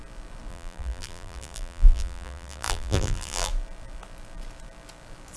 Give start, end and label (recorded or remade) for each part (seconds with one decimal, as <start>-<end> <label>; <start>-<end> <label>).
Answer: 0.0-0.5 recorded; 0.5-3.5 remade; 3.5-5.4 recorded